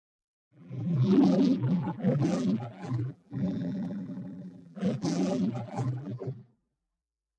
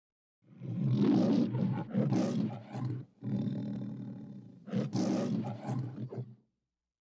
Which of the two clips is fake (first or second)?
first